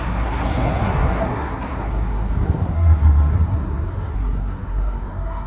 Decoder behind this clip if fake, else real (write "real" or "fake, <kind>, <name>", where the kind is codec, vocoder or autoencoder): fake, codec, SNAC